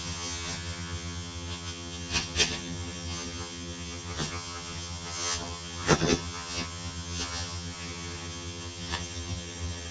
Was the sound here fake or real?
fake